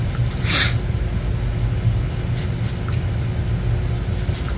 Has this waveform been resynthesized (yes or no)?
no